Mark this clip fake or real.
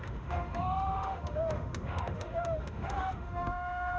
fake